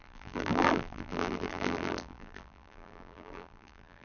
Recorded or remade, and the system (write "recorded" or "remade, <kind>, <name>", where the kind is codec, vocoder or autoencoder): remade, vocoder, BigVGAN v2